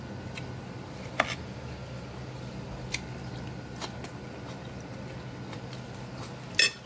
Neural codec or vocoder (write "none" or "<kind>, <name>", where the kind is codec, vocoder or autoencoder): none